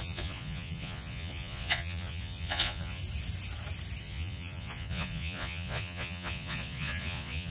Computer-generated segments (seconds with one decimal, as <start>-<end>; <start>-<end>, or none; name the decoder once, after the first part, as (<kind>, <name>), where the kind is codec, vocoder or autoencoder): 0.0-3.0 (vocoder, Vocos); 4.0-7.5